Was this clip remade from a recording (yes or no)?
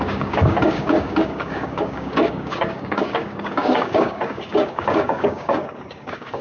yes